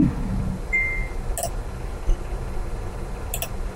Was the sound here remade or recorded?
recorded